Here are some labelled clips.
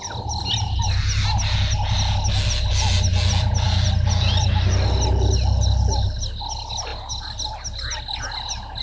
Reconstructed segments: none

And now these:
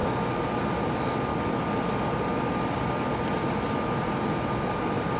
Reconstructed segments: none